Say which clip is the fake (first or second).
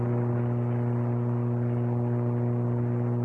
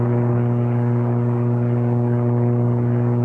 second